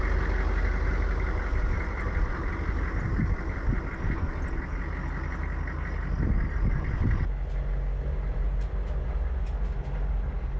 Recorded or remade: recorded